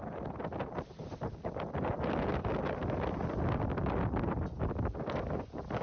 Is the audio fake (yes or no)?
no